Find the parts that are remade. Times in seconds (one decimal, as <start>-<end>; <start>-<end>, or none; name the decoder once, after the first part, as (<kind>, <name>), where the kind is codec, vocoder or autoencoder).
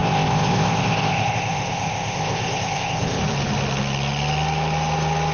0.0-3.2 (codec, ZipCodec)